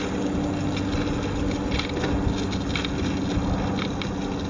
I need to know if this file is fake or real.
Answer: real